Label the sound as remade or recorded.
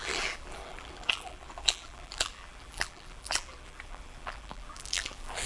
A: remade